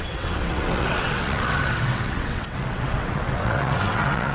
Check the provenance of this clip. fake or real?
fake